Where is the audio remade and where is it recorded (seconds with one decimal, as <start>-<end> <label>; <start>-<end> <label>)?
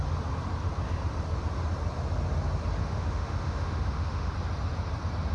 0.0-2.8 recorded; 2.8-4.3 remade; 4.3-5.3 recorded